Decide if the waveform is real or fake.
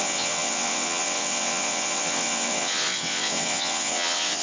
fake